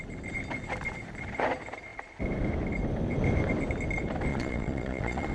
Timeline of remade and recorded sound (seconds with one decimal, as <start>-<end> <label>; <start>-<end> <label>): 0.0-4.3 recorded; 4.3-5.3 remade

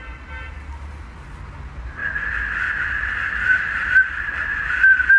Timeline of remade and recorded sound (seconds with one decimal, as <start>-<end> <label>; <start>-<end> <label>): 0.0-5.2 recorded

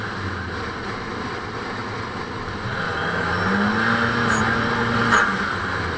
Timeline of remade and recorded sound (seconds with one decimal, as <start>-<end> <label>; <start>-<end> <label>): 0.0-6.0 recorded

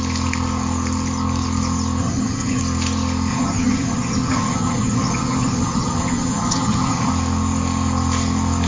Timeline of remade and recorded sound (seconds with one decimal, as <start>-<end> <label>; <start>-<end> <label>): 0.0-2.0 recorded; 2.0-2.6 remade; 2.6-3.3 recorded; 3.3-7.1 remade; 7.1-8.7 recorded

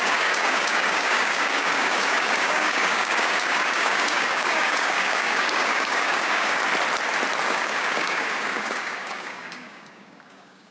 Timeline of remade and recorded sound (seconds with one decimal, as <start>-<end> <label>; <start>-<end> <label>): 0.0-6.6 remade; 6.6-7.4 recorded; 7.4-10.7 remade